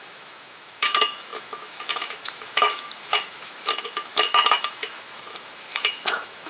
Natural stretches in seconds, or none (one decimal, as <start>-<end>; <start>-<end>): none